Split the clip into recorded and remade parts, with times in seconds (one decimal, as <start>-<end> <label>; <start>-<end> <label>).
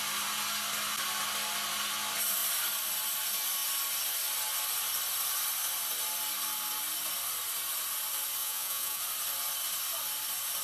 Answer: 0.0-8.4 recorded; 8.4-9.0 remade; 9.0-10.6 recorded